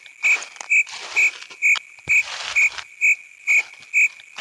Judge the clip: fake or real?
real